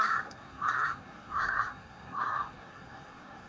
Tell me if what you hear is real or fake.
fake